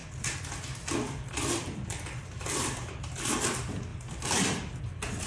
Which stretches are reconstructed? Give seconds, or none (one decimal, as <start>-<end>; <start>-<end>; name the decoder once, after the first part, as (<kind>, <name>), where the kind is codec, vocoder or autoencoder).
0.0-3.2 (vocoder, BigVGAN v2); 3.9-4.8